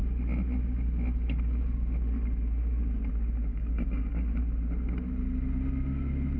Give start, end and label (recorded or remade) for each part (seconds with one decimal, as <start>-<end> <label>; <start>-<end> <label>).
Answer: 0.0-3.5 recorded; 3.5-4.4 remade; 4.4-6.4 recorded